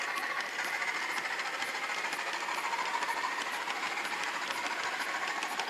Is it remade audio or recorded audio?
recorded